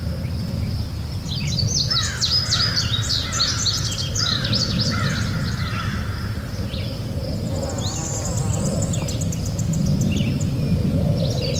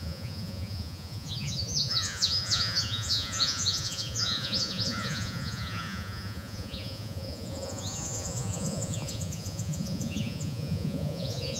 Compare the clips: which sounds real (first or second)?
first